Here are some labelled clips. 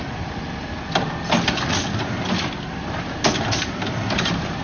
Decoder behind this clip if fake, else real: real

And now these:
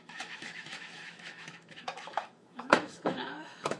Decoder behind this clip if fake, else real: fake, autoencoder, DAC-VAE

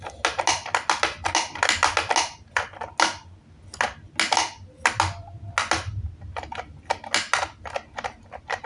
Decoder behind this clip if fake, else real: real